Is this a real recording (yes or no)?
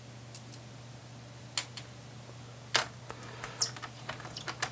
yes